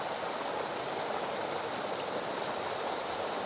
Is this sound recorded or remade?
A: recorded